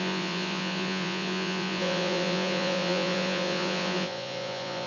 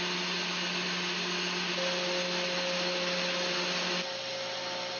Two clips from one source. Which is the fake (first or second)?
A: first